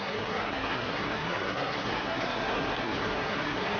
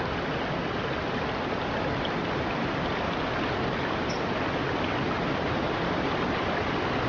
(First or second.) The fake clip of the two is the first